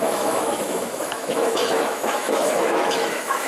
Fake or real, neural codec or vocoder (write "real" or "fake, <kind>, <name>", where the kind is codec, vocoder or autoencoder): fake, autoencoder, DAC-VAE